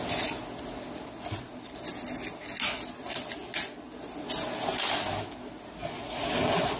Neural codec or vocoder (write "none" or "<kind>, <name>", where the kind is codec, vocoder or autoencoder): none